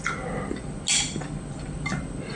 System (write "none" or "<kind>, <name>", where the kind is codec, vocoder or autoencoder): none